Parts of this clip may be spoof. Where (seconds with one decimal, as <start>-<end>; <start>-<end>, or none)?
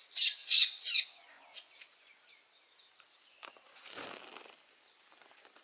0.4-2.2; 3.3-4.1